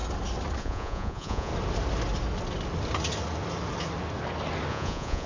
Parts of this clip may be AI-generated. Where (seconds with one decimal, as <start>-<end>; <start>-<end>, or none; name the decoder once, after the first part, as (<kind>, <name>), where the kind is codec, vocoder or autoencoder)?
0.6-1.5 (vocoder, Vocos); 4.7-5.3